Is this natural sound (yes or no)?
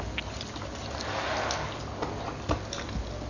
yes